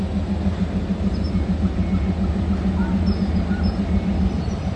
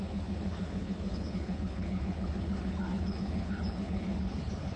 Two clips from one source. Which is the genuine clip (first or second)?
first